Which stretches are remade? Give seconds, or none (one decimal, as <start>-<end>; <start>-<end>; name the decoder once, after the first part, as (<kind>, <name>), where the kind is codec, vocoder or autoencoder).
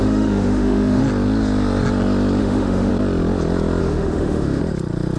0.0-1.0 (autoencoder, DAC-VAE); 2.4-2.9; 3.8-4.6